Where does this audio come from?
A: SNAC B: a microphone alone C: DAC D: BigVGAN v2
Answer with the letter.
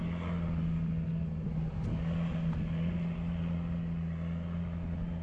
B